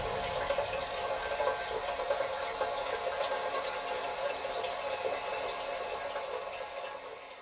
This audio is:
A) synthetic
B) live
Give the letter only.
B